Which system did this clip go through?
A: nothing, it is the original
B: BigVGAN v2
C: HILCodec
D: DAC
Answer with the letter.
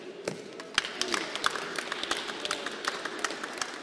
A